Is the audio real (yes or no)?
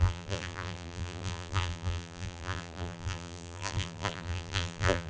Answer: no